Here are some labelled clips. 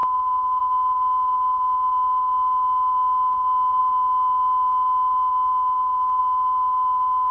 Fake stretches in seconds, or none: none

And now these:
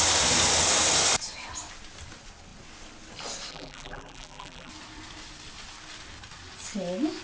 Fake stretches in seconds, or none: 3.5-4.7

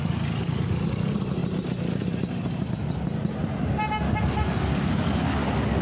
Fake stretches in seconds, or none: 1.4-2.7; 3.4-3.9

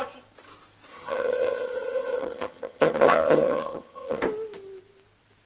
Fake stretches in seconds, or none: 0.9-4.2

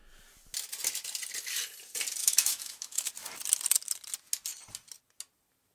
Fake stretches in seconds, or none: 2.2-3.1